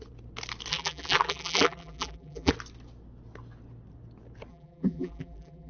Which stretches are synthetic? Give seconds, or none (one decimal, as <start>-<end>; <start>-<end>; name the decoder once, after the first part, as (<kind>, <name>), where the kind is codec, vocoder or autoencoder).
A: 0.7-2.5 (vocoder, BigVGAN v2); 4.5-5.7

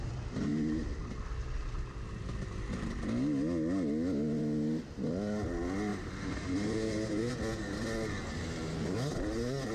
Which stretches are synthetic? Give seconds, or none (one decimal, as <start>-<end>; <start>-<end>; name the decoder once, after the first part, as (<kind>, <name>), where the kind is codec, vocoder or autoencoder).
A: 5.9-7.3 (vocoder, BigVGAN v2)

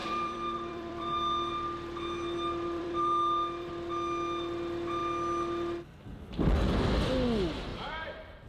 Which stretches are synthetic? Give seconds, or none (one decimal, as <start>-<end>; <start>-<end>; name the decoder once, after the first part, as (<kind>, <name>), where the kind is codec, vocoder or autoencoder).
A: 0.0-3.7 (vocoder, BigVGAN v2); 7.7-8.5

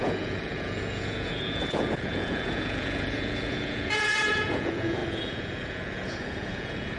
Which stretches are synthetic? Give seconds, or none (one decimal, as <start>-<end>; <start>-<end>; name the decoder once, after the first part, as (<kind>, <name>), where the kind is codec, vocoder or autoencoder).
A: 0.0-7.0 (vocoder, Vocos)

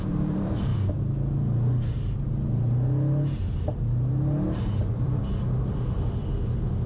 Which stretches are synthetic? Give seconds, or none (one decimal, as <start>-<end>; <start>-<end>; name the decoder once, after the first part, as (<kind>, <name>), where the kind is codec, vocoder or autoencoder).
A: 0.0-0.7 (vocoder, BigVGAN v2); 4.8-5.2

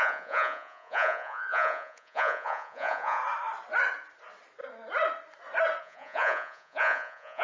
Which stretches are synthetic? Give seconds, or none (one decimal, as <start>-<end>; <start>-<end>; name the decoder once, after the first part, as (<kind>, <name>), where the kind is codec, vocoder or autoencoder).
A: 0.0-3.2 (vocoder, Vocos); 5.8-7.4

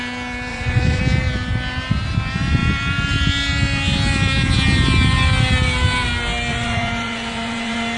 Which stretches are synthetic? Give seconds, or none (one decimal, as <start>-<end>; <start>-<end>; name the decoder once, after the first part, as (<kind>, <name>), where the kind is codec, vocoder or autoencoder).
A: 0.5-1.0 (vocoder, Vocos); 6.5-8.0